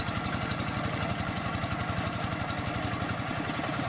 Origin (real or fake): real